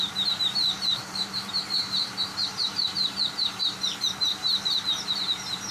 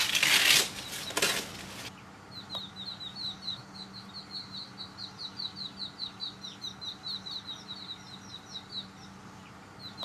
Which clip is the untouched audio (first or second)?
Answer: second